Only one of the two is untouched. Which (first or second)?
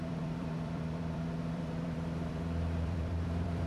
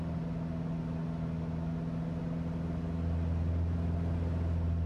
second